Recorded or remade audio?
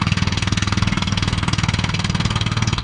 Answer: remade